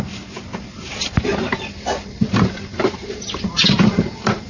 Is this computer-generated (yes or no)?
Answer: no